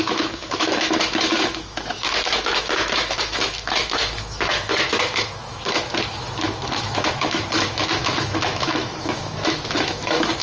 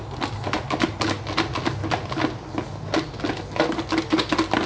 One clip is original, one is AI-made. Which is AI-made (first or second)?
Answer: first